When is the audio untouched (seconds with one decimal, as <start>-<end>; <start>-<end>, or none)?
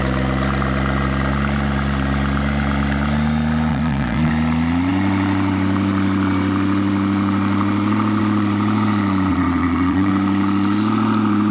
0.0-3.7; 4.3-9.3; 10.1-11.5